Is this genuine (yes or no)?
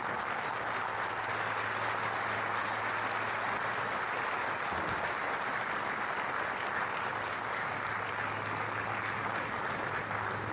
yes